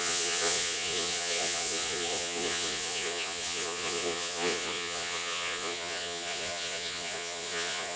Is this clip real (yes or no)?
no